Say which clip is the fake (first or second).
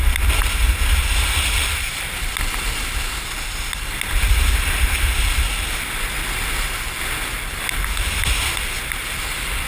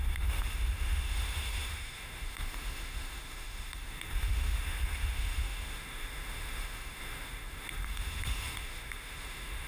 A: second